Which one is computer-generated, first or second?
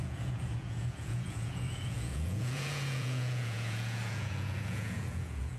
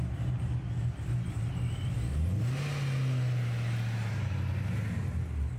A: first